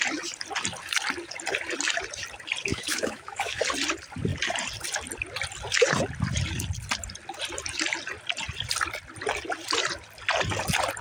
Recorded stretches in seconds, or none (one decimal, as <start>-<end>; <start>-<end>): 0.0-2.7; 3.6-11.0